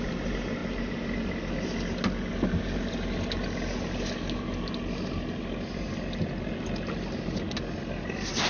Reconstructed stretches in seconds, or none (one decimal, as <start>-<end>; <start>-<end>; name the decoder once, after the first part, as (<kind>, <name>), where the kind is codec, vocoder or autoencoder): none